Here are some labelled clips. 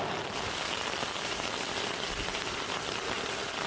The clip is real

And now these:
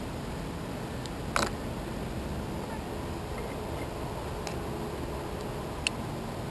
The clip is real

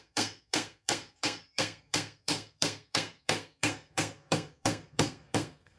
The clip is fake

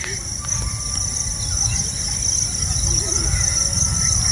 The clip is real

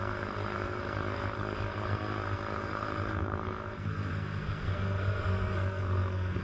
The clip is fake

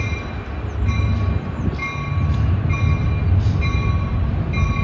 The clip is real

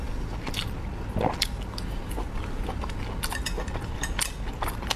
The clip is real